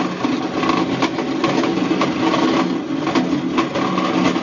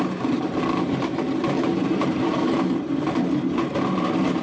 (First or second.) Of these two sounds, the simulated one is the second